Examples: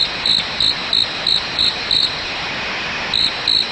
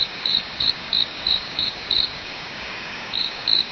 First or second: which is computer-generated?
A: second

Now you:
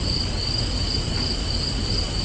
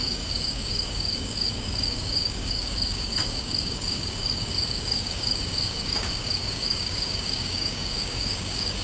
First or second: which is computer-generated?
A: second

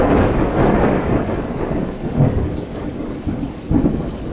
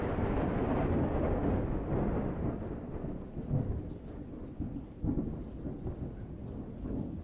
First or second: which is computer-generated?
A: first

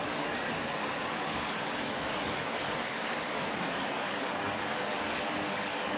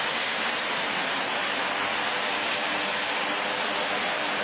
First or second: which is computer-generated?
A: first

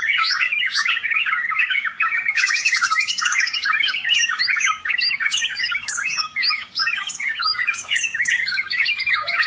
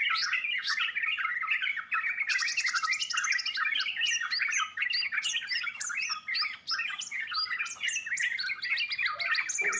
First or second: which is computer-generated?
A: first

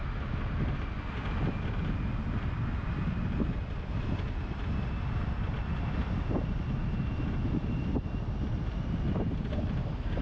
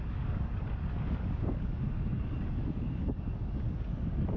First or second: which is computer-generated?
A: second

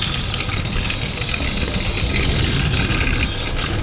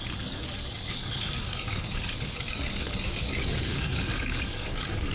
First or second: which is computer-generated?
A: second